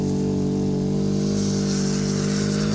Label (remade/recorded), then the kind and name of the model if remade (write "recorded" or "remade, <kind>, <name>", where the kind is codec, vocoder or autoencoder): recorded